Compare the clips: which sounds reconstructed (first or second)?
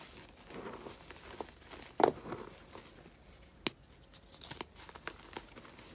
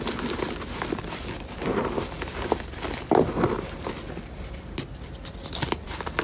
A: second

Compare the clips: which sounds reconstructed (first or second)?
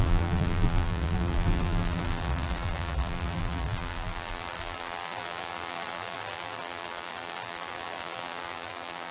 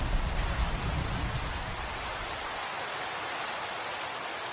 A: first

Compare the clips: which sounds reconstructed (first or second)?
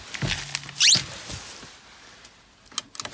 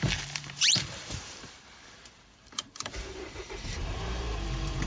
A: second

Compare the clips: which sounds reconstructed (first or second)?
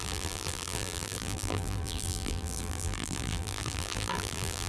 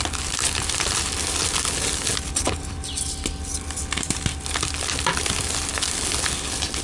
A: first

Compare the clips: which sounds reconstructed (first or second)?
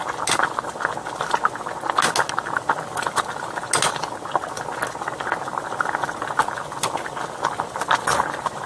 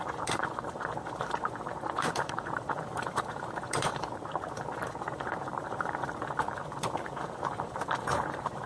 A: second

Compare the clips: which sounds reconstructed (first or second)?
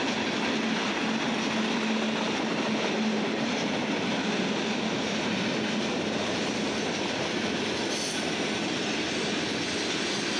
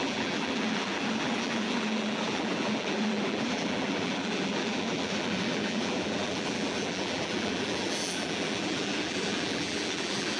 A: second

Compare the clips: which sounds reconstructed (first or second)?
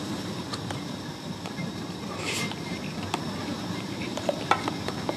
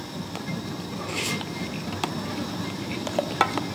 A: first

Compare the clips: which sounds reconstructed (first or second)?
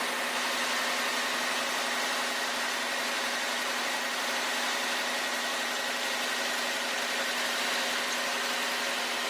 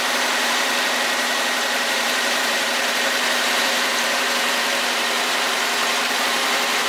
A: second